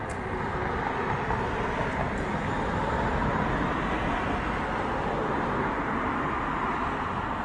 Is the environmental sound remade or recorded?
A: recorded